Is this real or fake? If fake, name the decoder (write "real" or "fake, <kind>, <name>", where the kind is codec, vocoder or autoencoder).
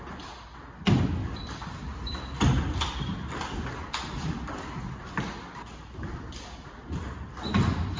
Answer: real